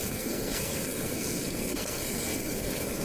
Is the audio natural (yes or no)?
no